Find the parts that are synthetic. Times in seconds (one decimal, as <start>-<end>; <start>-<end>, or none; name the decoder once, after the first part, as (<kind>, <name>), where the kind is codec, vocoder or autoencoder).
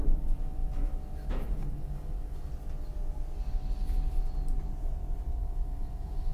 0.0-2.5 (autoencoder, DAC-VAE); 5.4-6.3